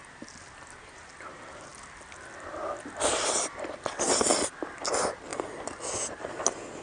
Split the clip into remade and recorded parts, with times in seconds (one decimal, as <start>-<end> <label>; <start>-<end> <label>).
0.0-6.8 recorded